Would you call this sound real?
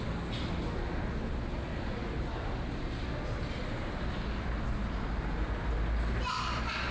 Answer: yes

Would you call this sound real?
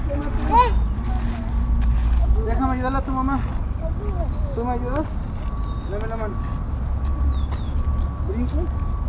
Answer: yes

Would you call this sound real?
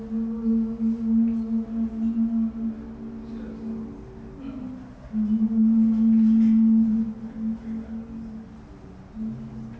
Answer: yes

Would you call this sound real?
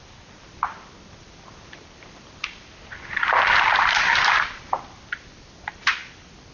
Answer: no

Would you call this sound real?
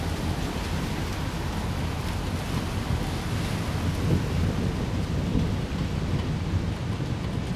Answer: yes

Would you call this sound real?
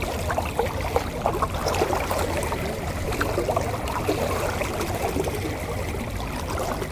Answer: yes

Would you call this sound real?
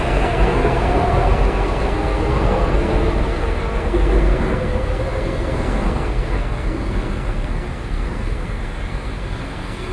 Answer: no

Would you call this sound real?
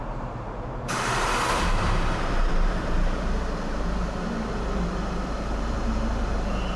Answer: no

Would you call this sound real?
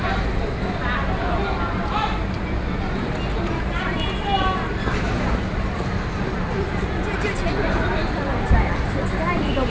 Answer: yes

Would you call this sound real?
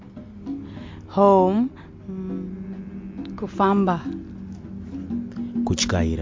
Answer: yes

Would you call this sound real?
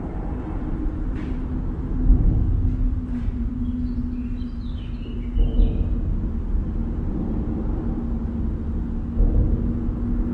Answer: yes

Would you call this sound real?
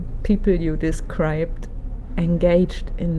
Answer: yes